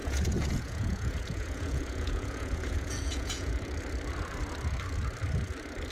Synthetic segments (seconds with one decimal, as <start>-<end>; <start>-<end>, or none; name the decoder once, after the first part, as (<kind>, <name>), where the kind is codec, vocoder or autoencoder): 0.0-3.5 (vocoder, Vocos)

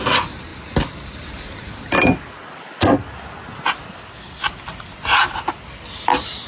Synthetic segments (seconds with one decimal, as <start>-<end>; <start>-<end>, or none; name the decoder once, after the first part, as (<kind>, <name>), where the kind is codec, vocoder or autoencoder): none

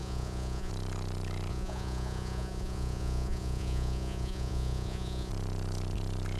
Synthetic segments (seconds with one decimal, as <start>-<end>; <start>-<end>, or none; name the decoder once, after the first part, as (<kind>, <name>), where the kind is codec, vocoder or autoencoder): 0.0-0.7 (vocoder, Vocos); 1.5-5.3